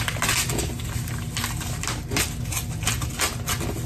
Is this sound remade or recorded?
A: recorded